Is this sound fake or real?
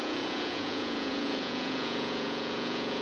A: fake